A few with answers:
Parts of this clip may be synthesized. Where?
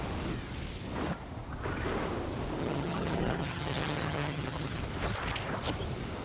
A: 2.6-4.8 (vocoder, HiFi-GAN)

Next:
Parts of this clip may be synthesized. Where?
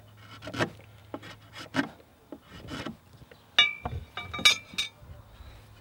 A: none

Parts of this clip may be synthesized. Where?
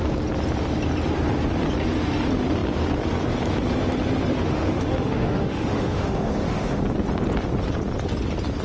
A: 4.3-6.8 (autoencoder, DAC-VAE)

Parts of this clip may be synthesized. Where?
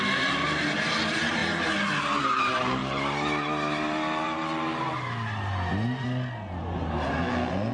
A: none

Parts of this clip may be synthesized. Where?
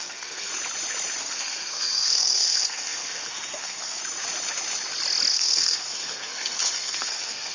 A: 0.0-0.5 (codec, SNAC); 1.2-4.0; 5.3-7.5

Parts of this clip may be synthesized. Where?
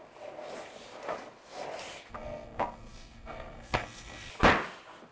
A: 2.1-4.3 (codec, SNAC)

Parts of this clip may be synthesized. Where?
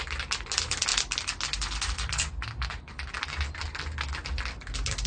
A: none